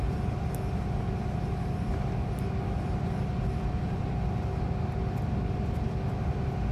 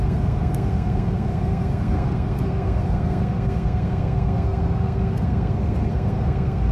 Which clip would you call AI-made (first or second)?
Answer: second